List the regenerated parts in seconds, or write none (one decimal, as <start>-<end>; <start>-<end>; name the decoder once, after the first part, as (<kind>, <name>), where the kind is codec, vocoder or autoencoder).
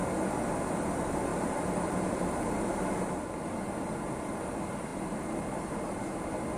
1.3-3.0 (vocoder, BigVGAN v2); 4.9-5.9